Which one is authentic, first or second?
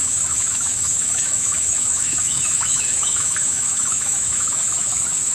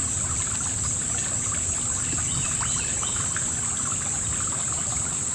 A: second